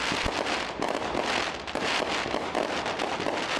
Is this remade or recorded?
recorded